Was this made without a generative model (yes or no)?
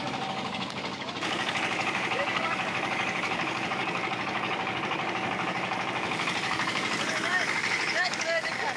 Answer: no